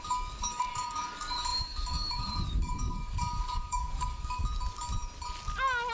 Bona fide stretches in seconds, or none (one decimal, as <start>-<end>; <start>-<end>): 4.4-5.9